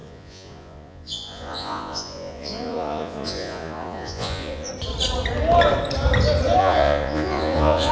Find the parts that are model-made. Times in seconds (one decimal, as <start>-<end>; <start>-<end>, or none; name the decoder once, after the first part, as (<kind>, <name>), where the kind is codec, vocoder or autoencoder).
0.0-4.7 (vocoder, Vocos); 6.6-7.9